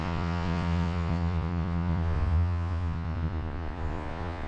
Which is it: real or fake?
fake